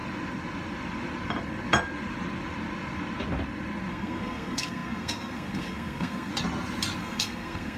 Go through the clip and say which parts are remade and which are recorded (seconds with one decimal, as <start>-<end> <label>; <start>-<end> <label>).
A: 0.0-3.9 recorded; 3.9-6.3 remade; 6.3-7.0 recorded; 7.0-7.8 remade